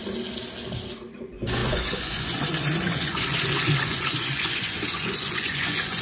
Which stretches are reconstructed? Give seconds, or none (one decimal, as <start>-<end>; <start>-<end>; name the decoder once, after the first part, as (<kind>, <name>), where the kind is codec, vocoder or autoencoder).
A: 1.2-6.0 (vocoder, Vocos)